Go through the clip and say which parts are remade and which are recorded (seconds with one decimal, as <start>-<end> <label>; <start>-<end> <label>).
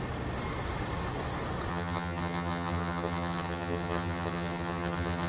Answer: 0.0-1.7 recorded; 1.7-5.3 remade